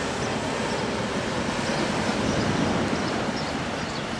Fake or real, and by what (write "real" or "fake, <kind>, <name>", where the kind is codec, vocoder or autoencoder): real